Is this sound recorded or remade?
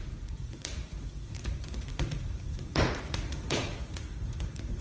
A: remade